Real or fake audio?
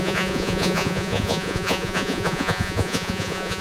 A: fake